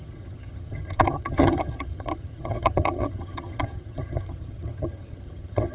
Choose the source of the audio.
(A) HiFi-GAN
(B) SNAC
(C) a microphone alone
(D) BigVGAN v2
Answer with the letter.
A